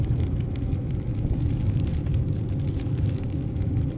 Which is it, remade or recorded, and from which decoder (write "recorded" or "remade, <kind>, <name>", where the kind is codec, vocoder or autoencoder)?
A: recorded